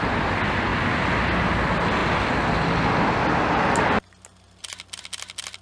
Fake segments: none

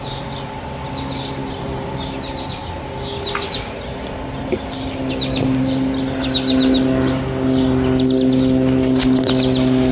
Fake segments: none

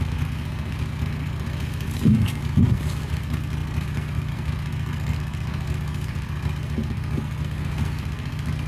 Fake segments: 0.0-8.7 (codec, SNAC)

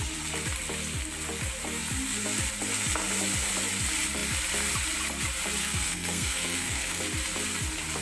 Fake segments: 5.6-7.0 (codec, SNAC)